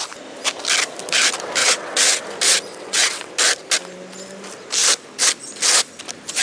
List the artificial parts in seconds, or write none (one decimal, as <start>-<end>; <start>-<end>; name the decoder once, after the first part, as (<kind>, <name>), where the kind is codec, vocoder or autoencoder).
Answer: 1.6-2.2 (vocoder, WaveNeXt); 2.7-3.3